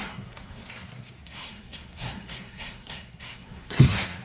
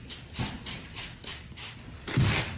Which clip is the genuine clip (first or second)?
second